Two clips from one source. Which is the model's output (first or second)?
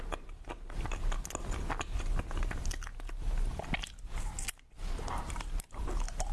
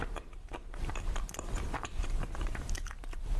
second